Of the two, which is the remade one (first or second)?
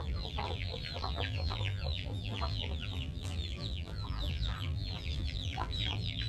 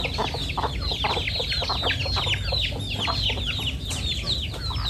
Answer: first